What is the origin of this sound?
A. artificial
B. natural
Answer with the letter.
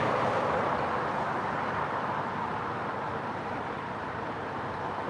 A